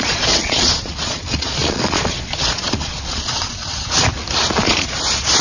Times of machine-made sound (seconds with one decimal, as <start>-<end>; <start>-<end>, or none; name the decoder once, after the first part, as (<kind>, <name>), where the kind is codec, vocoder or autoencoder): 0.0-4.0 (vocoder, Vocos); 4.6-5.4